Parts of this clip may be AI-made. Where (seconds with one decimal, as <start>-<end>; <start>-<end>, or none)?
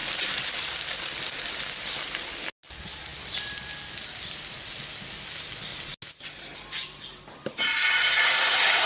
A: 0.0-1.0; 3.1-4.8